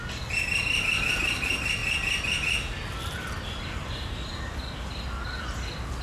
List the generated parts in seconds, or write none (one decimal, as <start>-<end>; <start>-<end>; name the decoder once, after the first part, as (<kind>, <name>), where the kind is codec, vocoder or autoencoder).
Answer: none

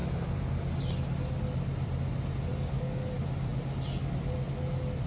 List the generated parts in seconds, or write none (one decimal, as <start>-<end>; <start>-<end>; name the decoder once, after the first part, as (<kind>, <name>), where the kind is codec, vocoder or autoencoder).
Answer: 2.5-3.1 (codec, DAC)

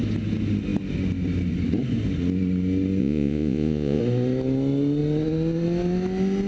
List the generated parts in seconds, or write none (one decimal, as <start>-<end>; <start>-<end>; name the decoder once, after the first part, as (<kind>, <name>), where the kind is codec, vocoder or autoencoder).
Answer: 3.0-4.0 (vocoder, Vocos)

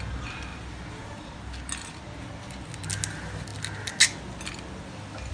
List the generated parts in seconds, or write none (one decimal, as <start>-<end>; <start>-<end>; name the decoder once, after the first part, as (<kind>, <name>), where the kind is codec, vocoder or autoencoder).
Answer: none